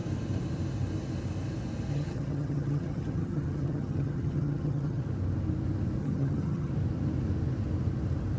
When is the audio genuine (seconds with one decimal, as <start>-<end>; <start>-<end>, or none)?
0.0-1.9; 5.0-6.0; 6.7-8.4